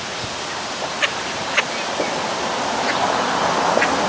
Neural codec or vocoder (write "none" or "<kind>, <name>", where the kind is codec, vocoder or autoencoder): none